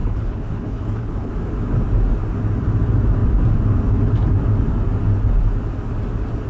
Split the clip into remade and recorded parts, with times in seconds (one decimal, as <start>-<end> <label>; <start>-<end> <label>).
0.0-1.3 remade; 1.3-6.5 recorded